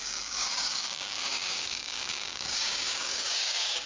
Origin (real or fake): fake